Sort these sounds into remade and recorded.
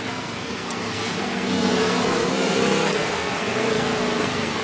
remade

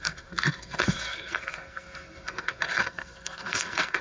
remade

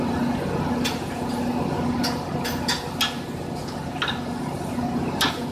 recorded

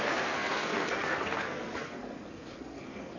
remade